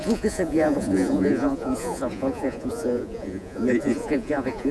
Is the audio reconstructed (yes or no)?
yes